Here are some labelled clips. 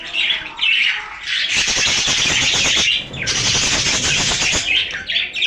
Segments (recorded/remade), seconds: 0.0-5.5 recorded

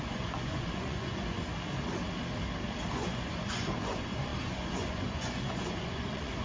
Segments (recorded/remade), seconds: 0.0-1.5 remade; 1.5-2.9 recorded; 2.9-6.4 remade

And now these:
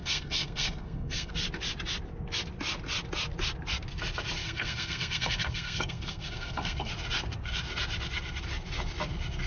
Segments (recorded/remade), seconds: 0.0-1.3 remade; 1.3-4.4 recorded; 4.4-6.9 remade; 6.9-9.5 recorded

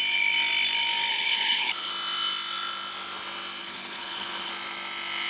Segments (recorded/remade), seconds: 0.0-1.1 recorded; 1.1-1.9 remade; 1.9-3.6 recorded; 3.6-4.5 remade; 4.5-5.3 recorded